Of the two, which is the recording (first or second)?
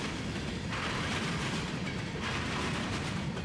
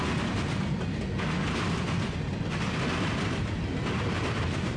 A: second